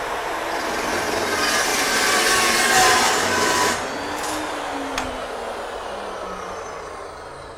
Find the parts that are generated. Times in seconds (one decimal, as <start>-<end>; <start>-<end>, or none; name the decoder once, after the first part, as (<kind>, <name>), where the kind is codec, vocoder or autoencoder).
1.7-2.6 (vocoder, BigVGAN v2)